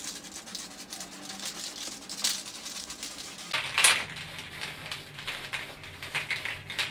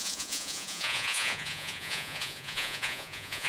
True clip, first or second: first